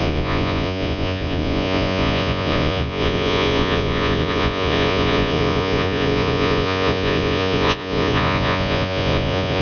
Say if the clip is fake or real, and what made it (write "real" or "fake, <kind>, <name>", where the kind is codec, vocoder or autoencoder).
fake, vocoder, Vocos